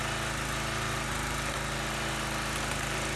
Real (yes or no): yes